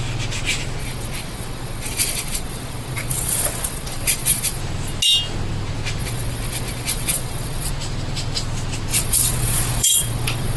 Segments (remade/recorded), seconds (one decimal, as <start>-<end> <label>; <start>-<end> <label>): 0.0-0.8 recorded; 0.8-4.6 remade; 4.6-6.0 recorded; 6.0-7.7 remade; 7.7-8.9 recorded; 8.9-10.6 remade